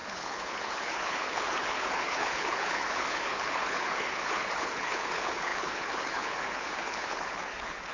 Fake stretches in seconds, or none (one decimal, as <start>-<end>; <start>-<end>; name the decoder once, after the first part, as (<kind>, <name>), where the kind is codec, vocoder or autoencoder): 0.0-7.9 (codec, HILCodec)